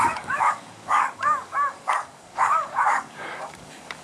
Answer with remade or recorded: remade